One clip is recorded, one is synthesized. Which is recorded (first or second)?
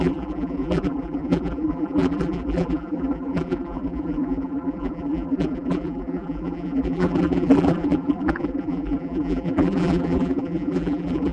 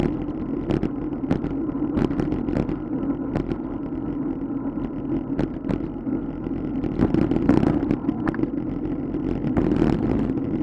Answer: second